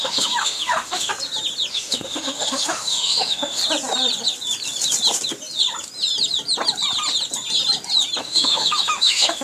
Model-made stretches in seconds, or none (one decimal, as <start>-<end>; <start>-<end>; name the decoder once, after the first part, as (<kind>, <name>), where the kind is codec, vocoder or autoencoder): 0.0-1.1 (autoencoder, DAC-VAE); 1.7-3.6; 8.2-9.4